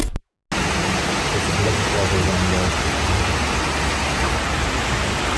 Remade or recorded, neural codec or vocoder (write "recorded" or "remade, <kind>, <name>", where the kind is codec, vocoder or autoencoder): recorded